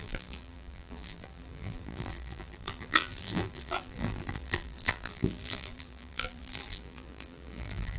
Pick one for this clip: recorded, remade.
remade